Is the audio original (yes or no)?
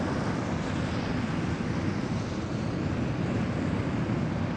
yes